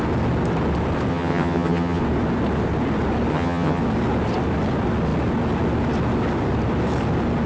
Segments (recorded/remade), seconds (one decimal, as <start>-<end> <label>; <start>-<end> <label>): 0.0-1.1 recorded; 1.1-2.0 remade; 2.0-3.3 recorded; 3.3-3.8 remade; 3.8-7.5 recorded